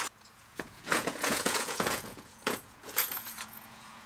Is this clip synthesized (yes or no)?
yes